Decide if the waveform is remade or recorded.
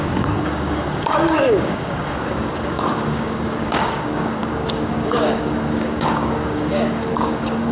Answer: remade